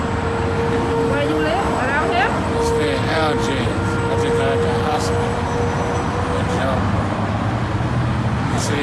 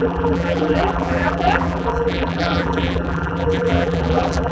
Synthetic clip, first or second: second